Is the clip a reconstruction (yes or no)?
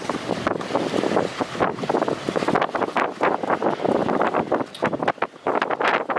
yes